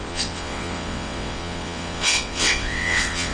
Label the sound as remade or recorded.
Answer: remade